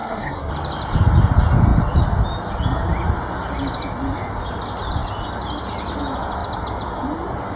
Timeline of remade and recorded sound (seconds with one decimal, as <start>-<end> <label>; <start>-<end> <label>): 0.0-0.5 remade; 0.5-7.6 recorded